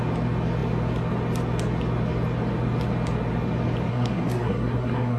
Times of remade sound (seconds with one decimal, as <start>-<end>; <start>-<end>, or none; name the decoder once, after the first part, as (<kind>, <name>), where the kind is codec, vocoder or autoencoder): 3.9-5.2 (codec, SNAC)